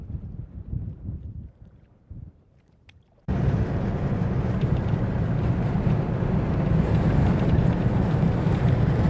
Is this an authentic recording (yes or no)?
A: no